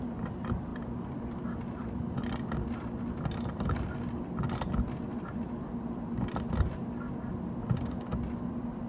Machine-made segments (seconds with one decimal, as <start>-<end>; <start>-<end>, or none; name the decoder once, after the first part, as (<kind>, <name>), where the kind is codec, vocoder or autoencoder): none